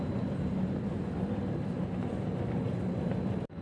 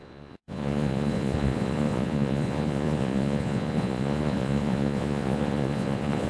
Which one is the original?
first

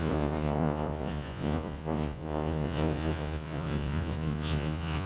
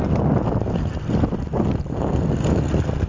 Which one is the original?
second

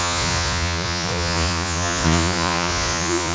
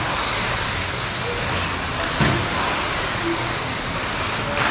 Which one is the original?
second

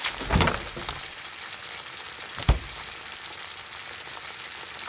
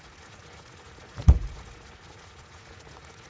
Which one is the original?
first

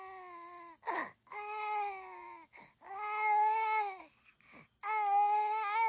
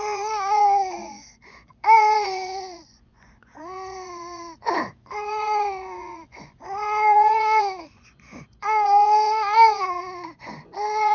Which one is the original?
first